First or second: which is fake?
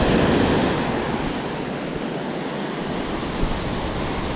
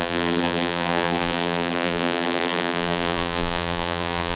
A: second